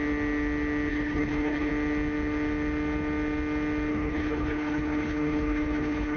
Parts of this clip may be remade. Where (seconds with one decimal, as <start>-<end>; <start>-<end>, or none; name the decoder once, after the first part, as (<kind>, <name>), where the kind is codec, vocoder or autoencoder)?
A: 0.9-1.7 (codec, HILCodec); 3.9-6.2